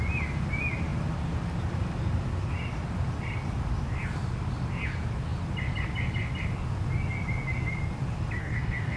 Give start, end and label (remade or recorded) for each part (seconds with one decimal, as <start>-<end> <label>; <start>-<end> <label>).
0.0-8.4 recorded; 8.4-9.0 remade

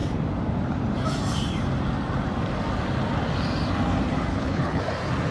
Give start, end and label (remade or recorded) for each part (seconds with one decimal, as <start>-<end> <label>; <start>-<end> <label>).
0.0-4.3 recorded; 4.3-4.8 remade; 4.8-5.3 recorded

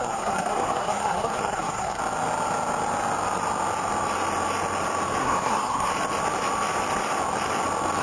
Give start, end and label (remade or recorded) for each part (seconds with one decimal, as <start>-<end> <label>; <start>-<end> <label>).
0.0-2.0 remade; 2.0-5.2 recorded; 5.2-5.9 remade; 5.9-8.0 recorded

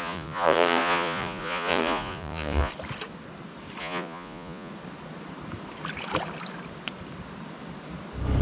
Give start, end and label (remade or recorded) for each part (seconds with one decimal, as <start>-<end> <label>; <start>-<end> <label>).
0.0-2.7 remade; 2.7-3.8 recorded; 3.8-4.7 remade; 4.7-8.4 recorded

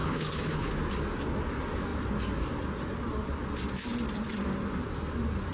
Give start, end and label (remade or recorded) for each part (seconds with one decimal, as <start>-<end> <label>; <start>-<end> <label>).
0.0-0.7 remade; 0.7-5.5 recorded

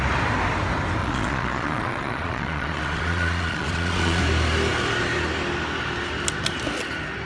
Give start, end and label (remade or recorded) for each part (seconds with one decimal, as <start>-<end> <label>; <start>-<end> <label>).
0.0-1.0 recorded; 1.0-4.2 remade; 4.2-7.3 recorded